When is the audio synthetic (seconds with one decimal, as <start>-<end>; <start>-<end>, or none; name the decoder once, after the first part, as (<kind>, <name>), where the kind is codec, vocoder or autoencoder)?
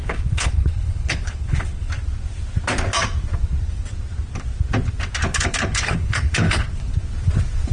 0.0-1.9 (codec, HILCodec); 5.3-6.9